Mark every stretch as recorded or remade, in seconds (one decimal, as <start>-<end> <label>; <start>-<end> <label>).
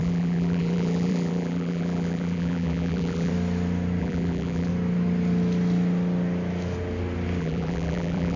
0.0-3.3 remade; 3.3-4.0 recorded; 4.0-4.7 remade; 4.7-7.4 recorded; 7.4-8.4 remade